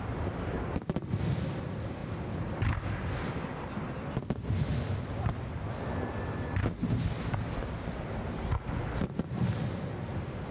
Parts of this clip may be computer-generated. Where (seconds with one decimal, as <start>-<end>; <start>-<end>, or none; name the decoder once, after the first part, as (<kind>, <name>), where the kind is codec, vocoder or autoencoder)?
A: none